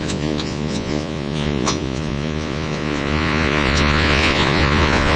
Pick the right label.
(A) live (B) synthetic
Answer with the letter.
B